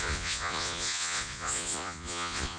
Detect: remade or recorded remade